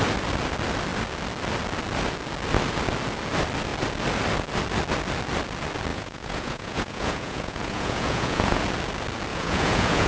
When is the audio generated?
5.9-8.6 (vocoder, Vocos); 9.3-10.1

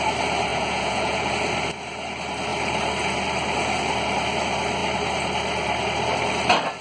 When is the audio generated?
0.5-1.3 (vocoder, Vocos)

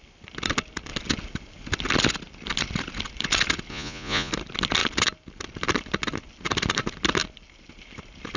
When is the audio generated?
3.7-4.3 (vocoder, Vocos)

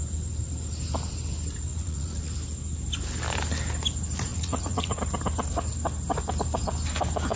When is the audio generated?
1.7-2.3 (vocoder, Vocos); 4.3-5.0